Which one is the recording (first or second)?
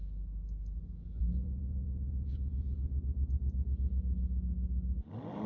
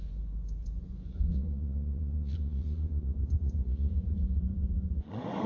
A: first